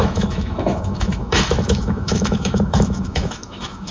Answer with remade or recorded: remade